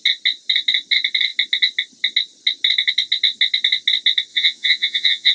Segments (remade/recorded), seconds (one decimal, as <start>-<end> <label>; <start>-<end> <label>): 0.0-4.3 recorded; 4.3-5.3 remade